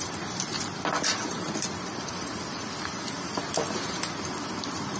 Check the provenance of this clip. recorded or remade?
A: remade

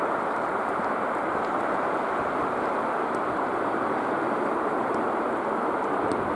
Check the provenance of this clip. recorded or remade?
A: remade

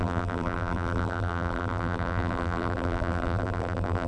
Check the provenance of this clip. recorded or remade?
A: remade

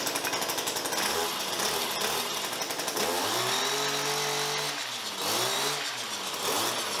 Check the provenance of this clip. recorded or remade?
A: recorded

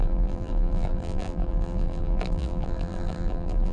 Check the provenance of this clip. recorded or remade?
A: remade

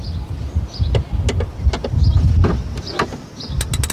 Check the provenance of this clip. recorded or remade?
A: recorded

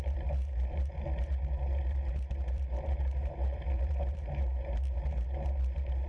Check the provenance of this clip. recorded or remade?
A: remade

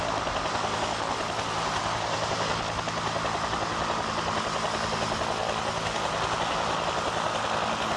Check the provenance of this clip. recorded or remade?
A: recorded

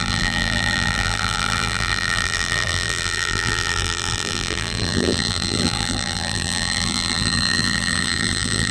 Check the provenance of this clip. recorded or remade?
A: remade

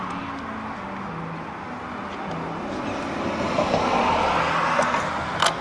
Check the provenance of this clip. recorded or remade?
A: recorded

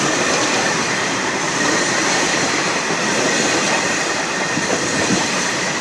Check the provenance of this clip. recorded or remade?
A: remade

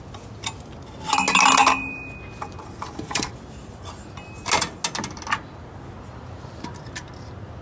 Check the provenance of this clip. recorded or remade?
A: recorded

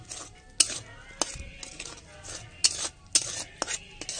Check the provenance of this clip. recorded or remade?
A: recorded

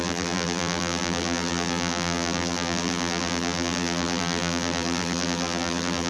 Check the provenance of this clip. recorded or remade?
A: remade